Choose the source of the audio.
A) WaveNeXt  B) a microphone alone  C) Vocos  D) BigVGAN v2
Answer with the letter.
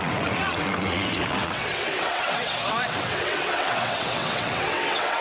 A